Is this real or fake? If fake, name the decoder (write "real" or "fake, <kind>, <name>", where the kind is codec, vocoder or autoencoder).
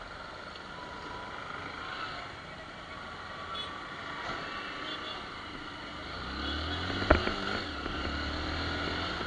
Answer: real